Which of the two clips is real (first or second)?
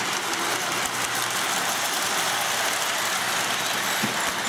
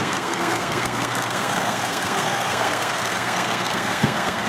first